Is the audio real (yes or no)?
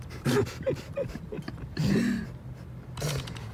yes